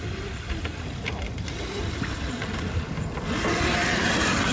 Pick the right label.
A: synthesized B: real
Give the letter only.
A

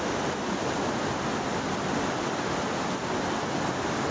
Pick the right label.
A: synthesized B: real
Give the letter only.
A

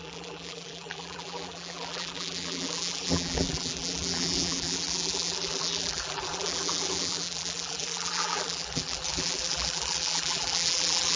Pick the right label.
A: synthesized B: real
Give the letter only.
A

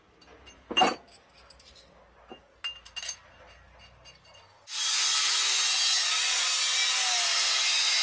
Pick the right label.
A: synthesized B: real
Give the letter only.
B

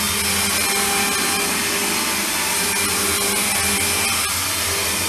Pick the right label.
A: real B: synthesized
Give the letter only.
A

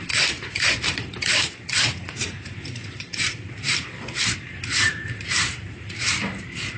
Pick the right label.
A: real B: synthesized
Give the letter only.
B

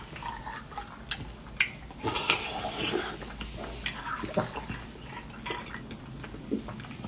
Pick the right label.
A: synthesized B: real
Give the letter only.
B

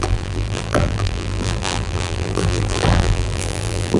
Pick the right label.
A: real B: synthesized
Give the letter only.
B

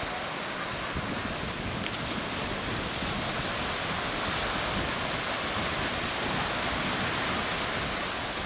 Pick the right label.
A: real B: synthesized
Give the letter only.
A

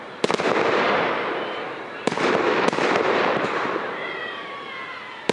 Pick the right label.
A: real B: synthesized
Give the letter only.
B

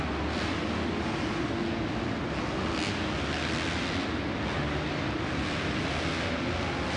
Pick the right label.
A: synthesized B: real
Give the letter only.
B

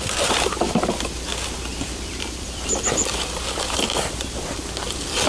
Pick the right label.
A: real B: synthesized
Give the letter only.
B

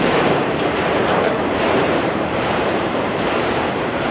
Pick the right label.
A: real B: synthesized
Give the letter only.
B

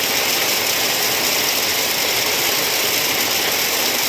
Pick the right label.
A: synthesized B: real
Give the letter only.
B